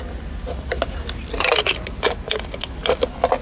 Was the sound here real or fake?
real